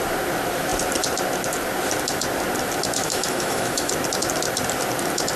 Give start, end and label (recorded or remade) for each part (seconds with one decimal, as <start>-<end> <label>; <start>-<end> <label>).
0.0-3.0 recorded; 3.0-3.9 remade; 3.9-5.4 recorded